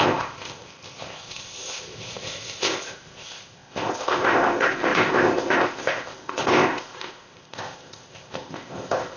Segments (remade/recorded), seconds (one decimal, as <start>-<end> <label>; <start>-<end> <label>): 0.0-9.2 remade